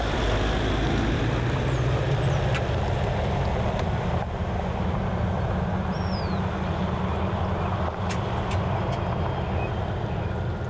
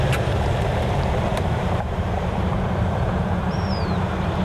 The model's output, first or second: second